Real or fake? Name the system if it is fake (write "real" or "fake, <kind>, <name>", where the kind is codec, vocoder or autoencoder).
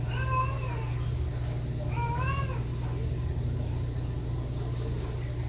real